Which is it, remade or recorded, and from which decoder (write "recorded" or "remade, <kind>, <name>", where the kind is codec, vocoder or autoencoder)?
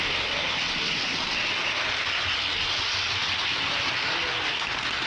recorded